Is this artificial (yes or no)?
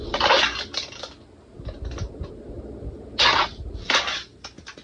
no